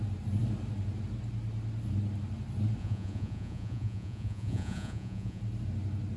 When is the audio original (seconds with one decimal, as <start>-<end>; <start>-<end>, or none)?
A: 0.0-2.8; 5.4-6.2